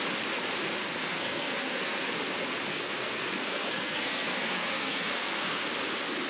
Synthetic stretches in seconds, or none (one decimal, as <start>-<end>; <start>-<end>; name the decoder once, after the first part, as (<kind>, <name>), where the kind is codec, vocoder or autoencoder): 0.8-2.1 (codec, SNAC); 2.7-5.6